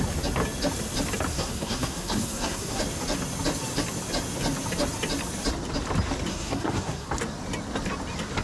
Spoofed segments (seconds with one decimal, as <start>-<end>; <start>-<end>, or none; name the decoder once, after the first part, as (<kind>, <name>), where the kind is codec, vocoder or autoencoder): 1.3-2.8 (codec, SNAC); 6.3-7.1